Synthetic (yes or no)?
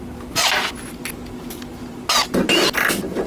no